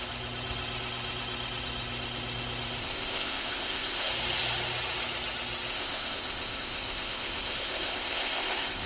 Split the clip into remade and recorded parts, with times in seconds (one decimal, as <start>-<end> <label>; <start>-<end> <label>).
0.0-2.8 recorded; 2.8-4.1 remade; 4.1-5.7 recorded; 5.7-8.9 remade

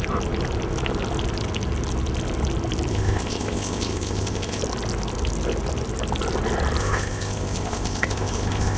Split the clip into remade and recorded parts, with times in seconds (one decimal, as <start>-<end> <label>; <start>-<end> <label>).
0.0-2.9 recorded; 2.9-4.6 remade; 4.6-6.8 recorded; 6.8-8.8 remade

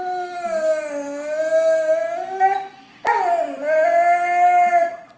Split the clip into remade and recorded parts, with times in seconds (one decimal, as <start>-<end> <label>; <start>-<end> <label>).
0.0-5.2 recorded

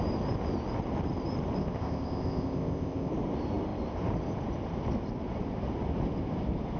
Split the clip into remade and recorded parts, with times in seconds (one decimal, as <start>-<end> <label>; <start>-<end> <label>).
0.0-1.6 recorded; 1.6-3.1 remade; 3.1-6.8 recorded

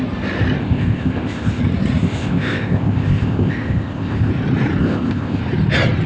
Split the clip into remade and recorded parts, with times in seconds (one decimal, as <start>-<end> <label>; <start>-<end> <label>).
0.0-0.6 recorded; 0.6-1.6 remade; 1.6-2.0 recorded; 2.0-4.3 remade; 4.3-4.8 recorded; 4.8-5.4 remade; 5.4-6.1 recorded

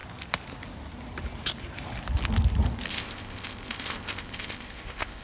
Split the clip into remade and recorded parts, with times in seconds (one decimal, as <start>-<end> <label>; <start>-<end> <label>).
0.0-2.9 recorded; 2.9-5.2 remade